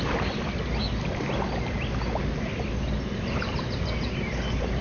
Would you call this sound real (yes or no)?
yes